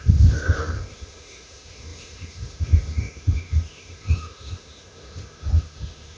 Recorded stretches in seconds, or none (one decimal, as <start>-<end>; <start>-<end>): none